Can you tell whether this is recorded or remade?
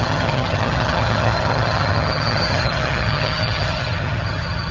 remade